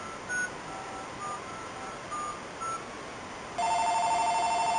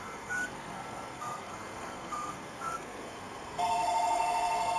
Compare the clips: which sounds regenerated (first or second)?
second